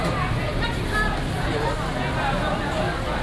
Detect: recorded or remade recorded